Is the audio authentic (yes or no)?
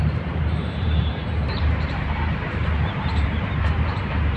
no